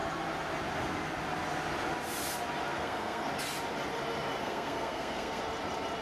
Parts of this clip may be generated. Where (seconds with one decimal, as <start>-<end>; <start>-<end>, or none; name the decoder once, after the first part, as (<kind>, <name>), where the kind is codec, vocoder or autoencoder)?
2.7-3.3 (codec, SNAC); 4.4-5.4